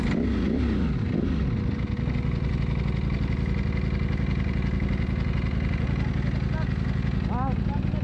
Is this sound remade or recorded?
recorded